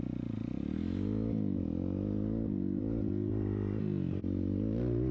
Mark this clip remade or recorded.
recorded